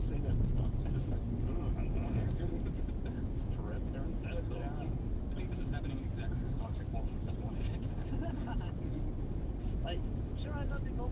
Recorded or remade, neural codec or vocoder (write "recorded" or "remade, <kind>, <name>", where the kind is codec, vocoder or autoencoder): recorded